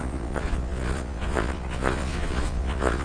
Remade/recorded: remade